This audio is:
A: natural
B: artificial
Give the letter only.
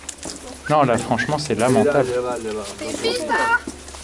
A